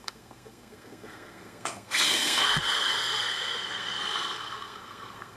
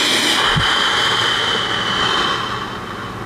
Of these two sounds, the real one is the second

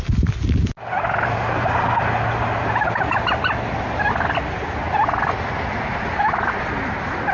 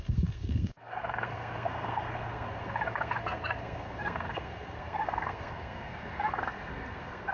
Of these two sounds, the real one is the first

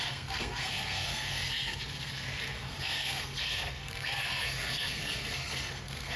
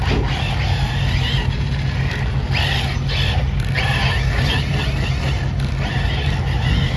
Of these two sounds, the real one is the second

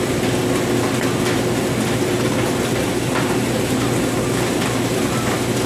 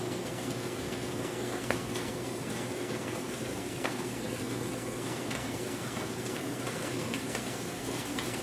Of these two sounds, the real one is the first